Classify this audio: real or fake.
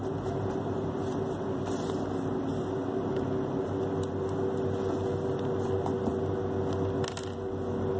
real